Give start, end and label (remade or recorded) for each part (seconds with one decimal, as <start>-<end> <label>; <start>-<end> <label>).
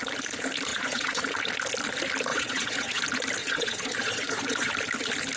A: 0.0-0.7 recorded; 0.7-1.2 remade; 1.2-2.3 recorded; 2.3-3.0 remade; 3.0-3.4 recorded; 3.4-4.7 remade; 4.7-5.4 recorded